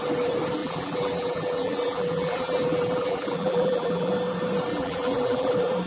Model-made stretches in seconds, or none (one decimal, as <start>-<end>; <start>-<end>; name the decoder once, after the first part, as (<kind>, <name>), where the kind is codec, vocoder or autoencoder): 0.6-4.1 (vocoder, BigVGAN v2); 4.7-5.5